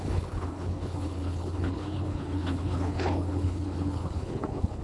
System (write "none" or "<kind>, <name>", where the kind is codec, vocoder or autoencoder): codec, HILCodec